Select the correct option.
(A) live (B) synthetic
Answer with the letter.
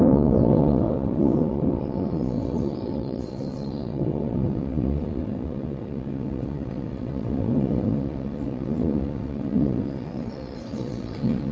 B